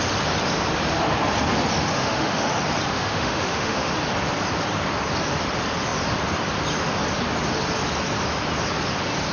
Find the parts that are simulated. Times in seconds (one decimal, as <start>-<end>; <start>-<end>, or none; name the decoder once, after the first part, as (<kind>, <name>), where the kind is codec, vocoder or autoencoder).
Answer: 1.9-2.5 (autoencoder, DAC-VAE); 2.9-3.9